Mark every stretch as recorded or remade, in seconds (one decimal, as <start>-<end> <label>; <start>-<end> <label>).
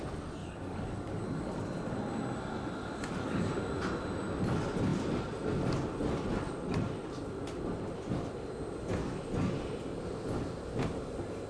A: 0.0-0.4 recorded; 0.4-1.6 remade; 1.6-2.8 recorded; 2.8-3.5 remade; 3.5-11.5 recorded